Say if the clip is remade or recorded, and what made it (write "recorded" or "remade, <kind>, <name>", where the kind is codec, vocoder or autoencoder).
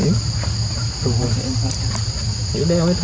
recorded